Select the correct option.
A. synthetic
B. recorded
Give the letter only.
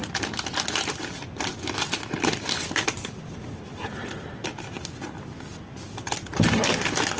B